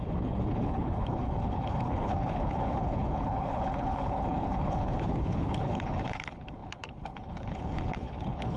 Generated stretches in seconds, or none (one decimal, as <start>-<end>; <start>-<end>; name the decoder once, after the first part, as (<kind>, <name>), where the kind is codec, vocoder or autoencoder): 0.0-8.6 (codec, HILCodec)